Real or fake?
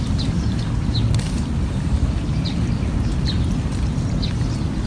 real